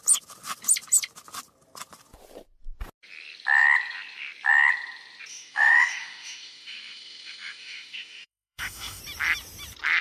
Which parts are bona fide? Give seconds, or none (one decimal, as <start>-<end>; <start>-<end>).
0.0-5.3; 9.0-10.0